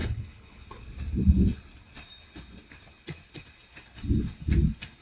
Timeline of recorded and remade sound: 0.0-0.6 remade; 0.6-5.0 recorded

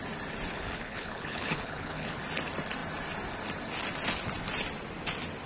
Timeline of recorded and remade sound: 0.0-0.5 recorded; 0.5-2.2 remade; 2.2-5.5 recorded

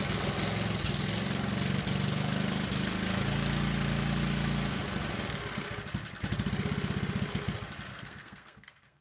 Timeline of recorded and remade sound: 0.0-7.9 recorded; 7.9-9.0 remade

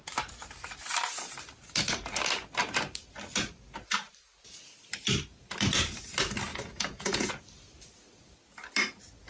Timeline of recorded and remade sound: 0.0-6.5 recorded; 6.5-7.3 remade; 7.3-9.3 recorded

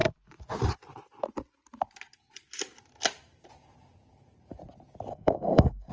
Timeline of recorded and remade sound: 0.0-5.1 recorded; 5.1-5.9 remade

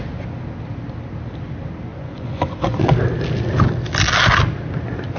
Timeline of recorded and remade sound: 0.0-1.9 recorded; 1.9-2.8 remade; 2.8-5.2 recorded